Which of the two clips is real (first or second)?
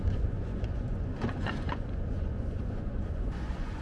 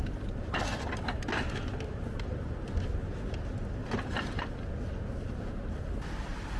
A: second